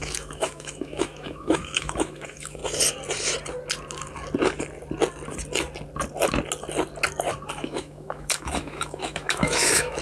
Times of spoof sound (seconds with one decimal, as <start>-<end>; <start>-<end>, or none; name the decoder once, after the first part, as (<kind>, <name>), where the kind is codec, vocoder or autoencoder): 0.0-2.6 (autoencoder, DAC-VAE); 7.5-10.0